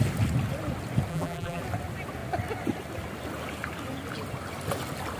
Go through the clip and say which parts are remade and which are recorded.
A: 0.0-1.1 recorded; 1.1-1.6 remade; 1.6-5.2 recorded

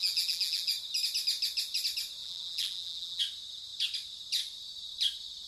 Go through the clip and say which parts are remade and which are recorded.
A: 0.0-0.7 remade; 0.7-2.2 recorded; 2.2-3.2 remade; 3.2-5.5 recorded

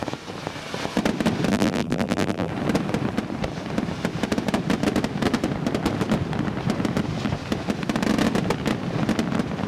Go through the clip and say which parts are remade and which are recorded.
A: 0.0-1.5 recorded; 1.5-2.5 remade; 2.5-9.7 recorded